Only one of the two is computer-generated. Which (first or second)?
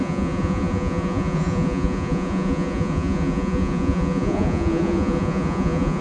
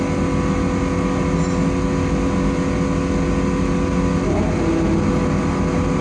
first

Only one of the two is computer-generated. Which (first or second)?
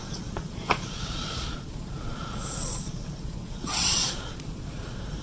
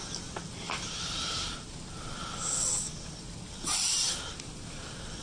first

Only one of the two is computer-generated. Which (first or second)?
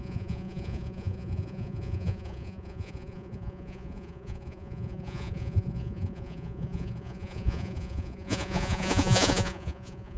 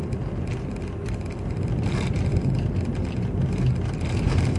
first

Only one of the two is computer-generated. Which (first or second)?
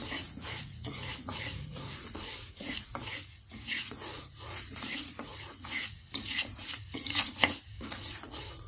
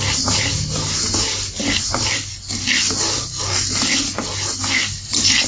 first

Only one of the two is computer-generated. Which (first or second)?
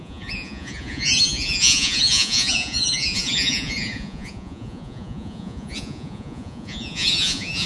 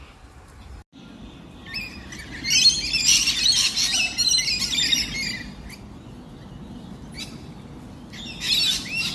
first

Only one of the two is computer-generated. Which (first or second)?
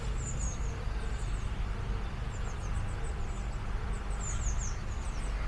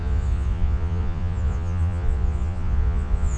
second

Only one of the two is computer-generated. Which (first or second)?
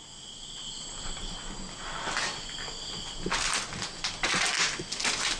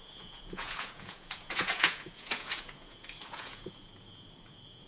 second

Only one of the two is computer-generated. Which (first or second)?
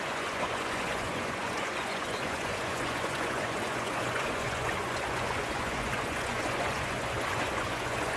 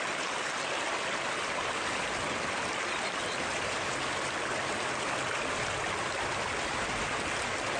first